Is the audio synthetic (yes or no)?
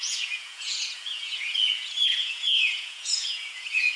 yes